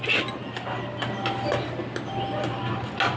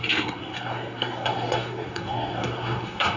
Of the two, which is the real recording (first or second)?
first